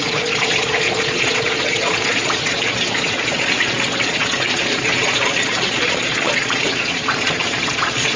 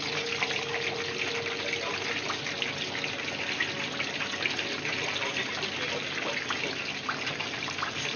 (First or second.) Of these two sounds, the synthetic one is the first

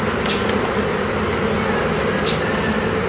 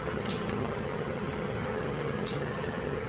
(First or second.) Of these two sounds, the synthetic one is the second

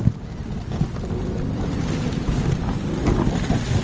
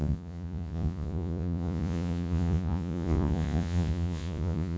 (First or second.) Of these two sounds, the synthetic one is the second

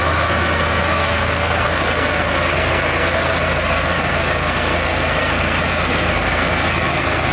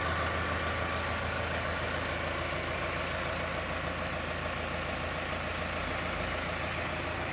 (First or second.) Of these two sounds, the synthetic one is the first